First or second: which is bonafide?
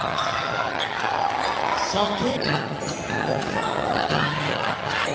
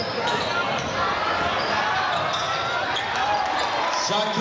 second